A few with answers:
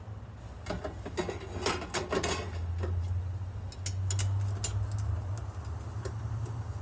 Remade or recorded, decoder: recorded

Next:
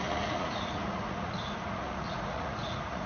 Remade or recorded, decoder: remade, vocoder, Vocos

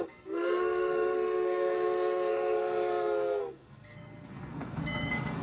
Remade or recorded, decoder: remade, codec, SNAC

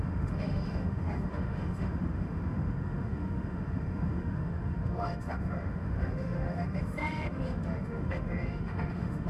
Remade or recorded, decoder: remade, autoencoder, DAC-VAE